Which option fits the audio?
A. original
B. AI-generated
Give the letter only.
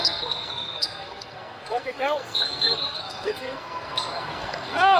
B